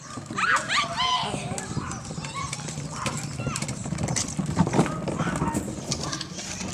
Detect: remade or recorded remade